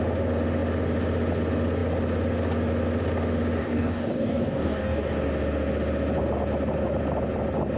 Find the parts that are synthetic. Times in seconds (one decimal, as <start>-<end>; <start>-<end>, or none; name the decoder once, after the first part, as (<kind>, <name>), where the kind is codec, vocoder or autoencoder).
3.6-5.3 (codec, DAC)

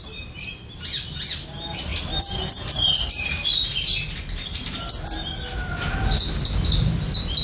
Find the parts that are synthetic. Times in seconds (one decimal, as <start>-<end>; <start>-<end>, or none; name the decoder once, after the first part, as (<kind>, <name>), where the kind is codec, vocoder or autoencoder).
none

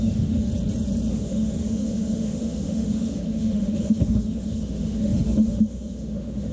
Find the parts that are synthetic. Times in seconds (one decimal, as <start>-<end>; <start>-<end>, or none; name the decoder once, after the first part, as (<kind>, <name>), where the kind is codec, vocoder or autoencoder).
0.0-0.5 (autoencoder, DAC-VAE); 1.1-6.5

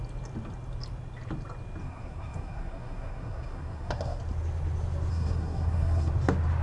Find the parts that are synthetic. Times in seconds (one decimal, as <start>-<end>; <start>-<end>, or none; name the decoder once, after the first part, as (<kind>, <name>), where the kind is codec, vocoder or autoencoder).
1.8-4.2 (codec, SNAC); 5.1-6.1

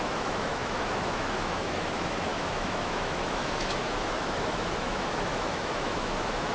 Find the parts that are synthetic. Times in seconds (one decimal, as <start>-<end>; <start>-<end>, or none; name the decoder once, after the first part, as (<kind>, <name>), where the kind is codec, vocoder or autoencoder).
0.0-6.5 (autoencoder, DAC-VAE)

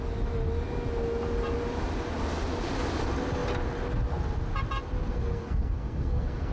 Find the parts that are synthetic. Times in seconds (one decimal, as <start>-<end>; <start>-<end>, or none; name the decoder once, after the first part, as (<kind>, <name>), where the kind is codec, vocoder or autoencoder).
5.1-6.5 (codec, SNAC)